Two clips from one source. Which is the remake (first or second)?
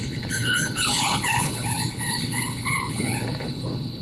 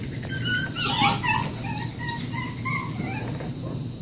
first